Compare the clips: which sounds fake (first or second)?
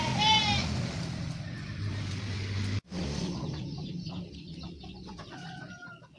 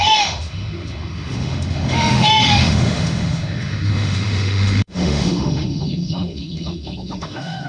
second